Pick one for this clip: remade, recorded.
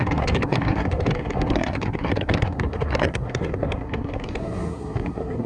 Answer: remade